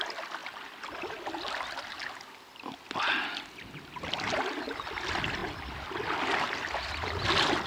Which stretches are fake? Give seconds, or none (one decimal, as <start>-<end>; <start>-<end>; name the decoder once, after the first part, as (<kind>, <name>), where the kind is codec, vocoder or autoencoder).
none